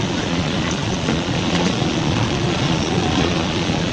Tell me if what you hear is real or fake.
fake